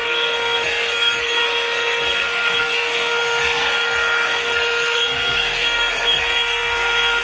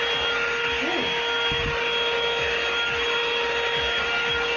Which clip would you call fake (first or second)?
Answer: first